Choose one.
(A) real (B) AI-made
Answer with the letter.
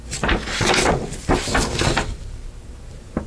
A